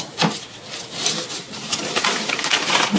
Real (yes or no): yes